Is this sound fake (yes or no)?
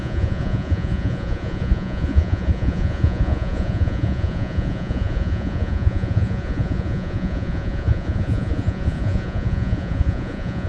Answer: yes